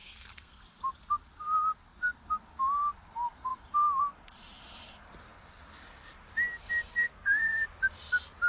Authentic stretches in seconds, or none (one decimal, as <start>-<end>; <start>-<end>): 0.6-6.9; 7.6-8.5